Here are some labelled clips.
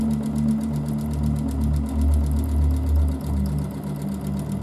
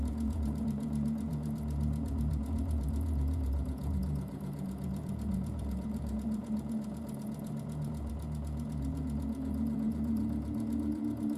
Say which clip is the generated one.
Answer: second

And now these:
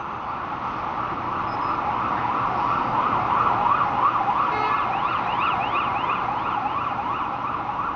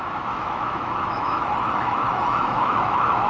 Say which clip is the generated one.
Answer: second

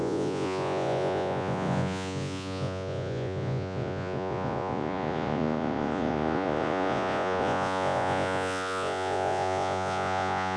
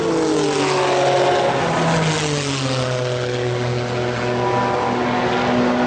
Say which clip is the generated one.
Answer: first